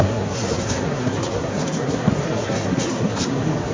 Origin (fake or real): fake